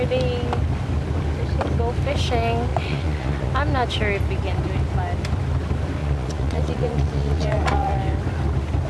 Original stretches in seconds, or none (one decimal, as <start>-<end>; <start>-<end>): 0.0-2.7; 3.5-6.0; 8.0-8.9